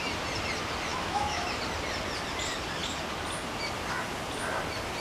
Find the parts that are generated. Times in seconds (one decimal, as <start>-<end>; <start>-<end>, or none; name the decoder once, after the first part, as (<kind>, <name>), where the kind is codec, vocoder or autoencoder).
0.9-1.6 (autoencoder, DAC-VAE)